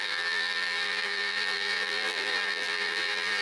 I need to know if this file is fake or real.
fake